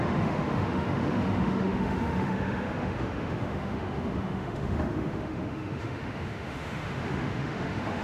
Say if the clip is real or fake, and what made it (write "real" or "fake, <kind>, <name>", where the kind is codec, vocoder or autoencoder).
fake, autoencoder, DAC-VAE